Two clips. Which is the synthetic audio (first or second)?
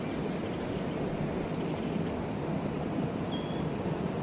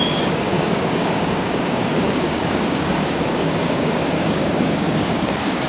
second